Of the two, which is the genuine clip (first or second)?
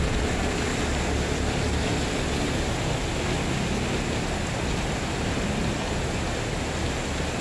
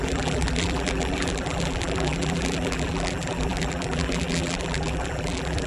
first